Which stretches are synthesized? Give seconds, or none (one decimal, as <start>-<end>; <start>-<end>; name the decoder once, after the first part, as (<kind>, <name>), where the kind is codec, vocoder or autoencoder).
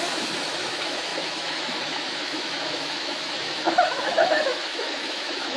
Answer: 0.0-5.6 (autoencoder, DAC-VAE)